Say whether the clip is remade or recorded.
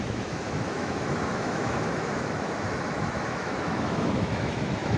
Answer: remade